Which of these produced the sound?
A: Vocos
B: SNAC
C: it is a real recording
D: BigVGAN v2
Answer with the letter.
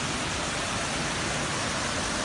C